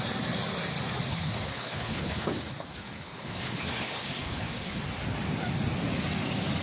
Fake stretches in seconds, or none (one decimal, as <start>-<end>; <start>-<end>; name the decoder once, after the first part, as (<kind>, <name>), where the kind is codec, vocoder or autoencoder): 1.1-4.8 (codec, HILCodec)